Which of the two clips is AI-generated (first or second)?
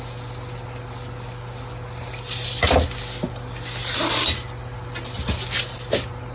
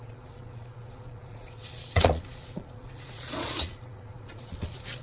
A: second